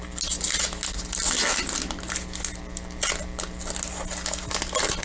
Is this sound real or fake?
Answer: real